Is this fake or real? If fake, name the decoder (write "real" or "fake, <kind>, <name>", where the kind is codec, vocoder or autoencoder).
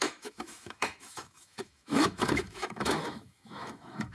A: fake, autoencoder, DAC-VAE